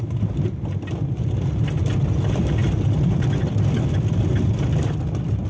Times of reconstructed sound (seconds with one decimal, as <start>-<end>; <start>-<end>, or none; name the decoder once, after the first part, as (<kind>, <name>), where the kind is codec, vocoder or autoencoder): none